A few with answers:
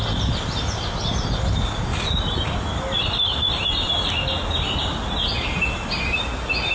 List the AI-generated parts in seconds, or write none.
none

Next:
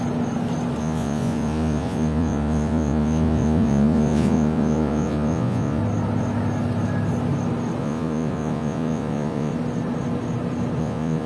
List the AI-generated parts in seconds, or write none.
0.8-5.8 (vocoder, Vocos); 7.8-9.5; 10.8-11.3

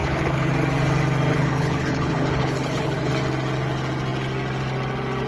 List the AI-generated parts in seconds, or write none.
0.0-0.5 (codec, HILCodec); 1.3-3.1